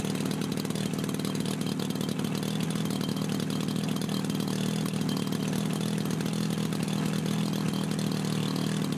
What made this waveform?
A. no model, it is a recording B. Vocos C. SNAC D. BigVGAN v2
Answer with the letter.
A